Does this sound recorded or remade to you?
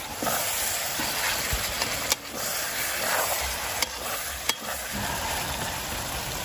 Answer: remade